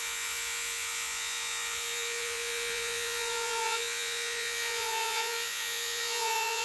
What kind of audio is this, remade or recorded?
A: remade